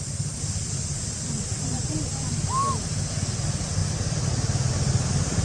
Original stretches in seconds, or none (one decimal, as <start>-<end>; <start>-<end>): 0.0-5.4